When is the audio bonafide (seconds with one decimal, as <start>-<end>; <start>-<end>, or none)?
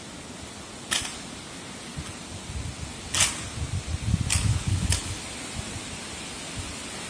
0.0-4.5; 5.2-7.1